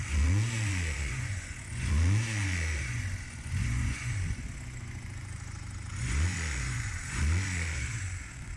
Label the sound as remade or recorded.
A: remade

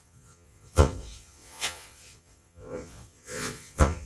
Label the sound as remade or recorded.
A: remade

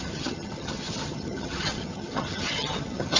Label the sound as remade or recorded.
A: remade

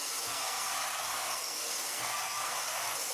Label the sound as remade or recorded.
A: remade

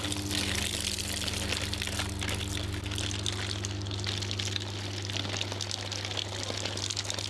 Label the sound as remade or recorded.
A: recorded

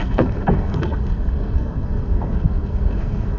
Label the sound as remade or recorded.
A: remade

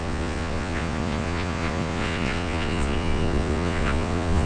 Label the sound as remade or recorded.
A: remade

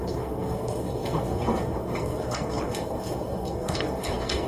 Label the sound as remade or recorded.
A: remade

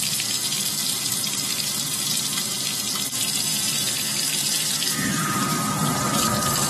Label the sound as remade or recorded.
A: remade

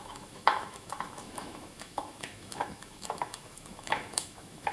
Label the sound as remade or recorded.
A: remade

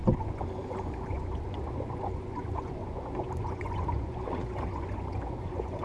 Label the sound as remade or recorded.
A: remade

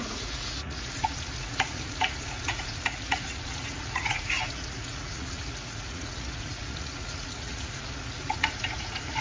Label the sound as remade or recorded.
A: remade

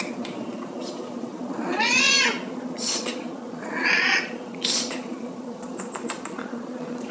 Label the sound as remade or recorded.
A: remade